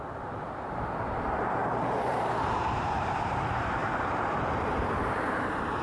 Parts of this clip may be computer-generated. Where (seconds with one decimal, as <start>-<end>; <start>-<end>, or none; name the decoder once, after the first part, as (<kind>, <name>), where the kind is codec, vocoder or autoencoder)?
0.0-5.8 (vocoder, BigVGAN v2)